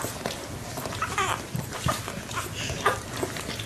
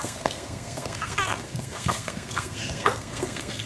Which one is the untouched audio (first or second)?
first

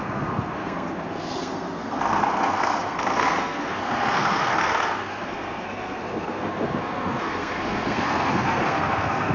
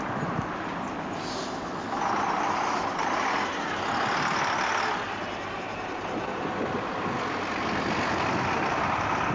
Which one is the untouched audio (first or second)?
second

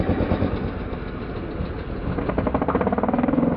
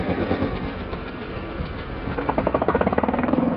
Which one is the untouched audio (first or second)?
first